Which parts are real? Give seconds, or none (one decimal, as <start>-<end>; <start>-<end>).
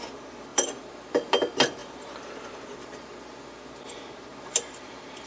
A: 0.0-0.5; 1.3-1.8; 3.7-4.3